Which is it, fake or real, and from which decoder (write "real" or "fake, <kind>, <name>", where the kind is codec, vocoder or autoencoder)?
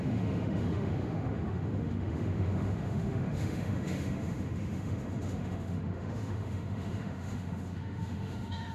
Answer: fake, autoencoder, DAC-VAE